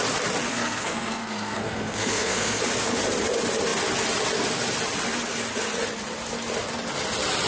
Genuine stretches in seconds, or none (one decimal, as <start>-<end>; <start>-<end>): 0.0-0.5; 2.6-7.5